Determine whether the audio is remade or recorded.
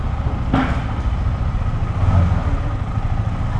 recorded